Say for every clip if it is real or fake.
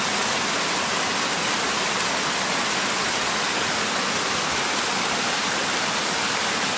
real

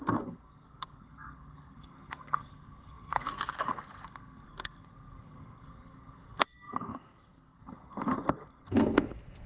fake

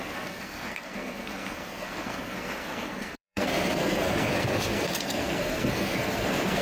fake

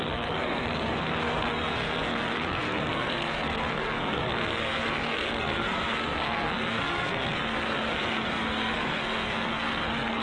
fake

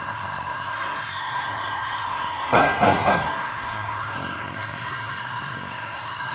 fake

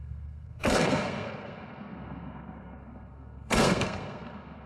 fake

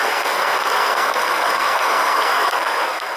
fake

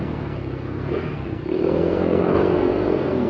fake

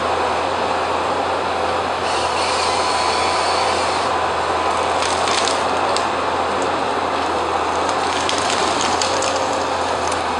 real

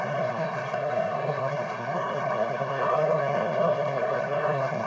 fake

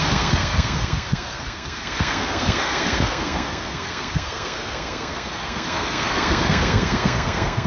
fake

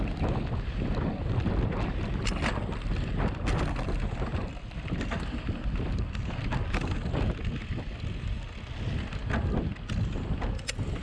real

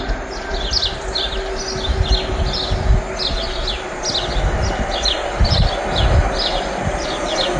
real